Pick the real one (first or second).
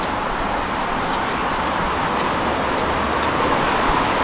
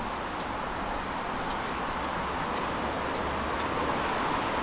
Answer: second